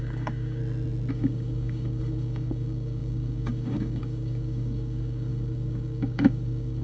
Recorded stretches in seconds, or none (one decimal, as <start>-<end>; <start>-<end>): 0.6-1.1